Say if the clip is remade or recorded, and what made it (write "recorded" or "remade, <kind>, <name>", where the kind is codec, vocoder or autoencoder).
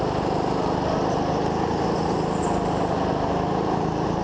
recorded